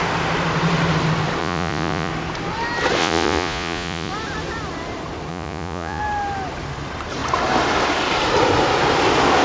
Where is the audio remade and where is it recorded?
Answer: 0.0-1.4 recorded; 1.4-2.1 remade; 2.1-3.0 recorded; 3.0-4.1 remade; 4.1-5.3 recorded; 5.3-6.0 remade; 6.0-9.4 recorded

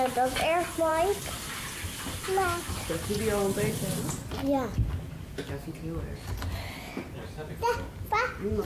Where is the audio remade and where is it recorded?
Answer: 0.0-8.6 recorded

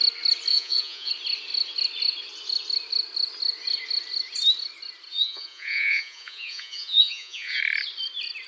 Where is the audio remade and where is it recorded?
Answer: 0.0-0.5 recorded; 0.5-1.1 remade; 1.1-5.1 recorded; 5.1-7.6 remade; 7.6-8.5 recorded

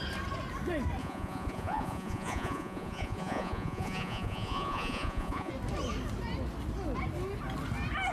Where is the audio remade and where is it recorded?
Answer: 0.0-1.0 recorded; 1.0-5.5 remade; 5.5-8.1 recorded

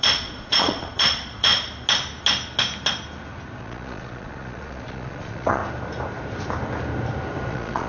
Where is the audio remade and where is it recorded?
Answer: 0.0-1.5 remade; 1.5-3.6 recorded; 3.6-5.6 remade; 5.6-7.5 recorded; 7.5-7.9 remade

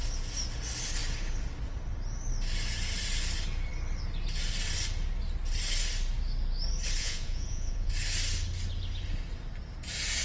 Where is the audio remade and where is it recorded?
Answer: 0.0-7.0 recorded; 7.0-7.9 remade; 7.9-10.2 recorded